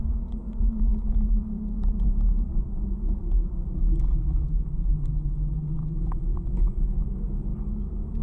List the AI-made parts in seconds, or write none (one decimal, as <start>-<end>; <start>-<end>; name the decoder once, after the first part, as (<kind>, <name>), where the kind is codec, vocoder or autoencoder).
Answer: 0.0-8.2 (codec, DAC)